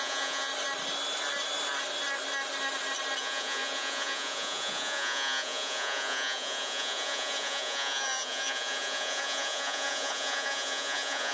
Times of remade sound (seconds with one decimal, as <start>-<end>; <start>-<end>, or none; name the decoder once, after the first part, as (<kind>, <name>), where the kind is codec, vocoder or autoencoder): 0.0-0.5 (vocoder, Vocos); 3.2-11.3